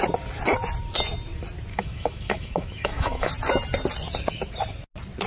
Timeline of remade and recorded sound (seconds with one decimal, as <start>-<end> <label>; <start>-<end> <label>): 0.0-1.7 recorded; 1.7-3.3 remade; 3.3-5.3 recorded